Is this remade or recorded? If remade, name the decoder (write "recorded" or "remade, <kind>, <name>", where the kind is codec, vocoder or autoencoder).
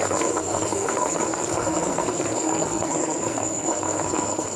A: remade, codec, SNAC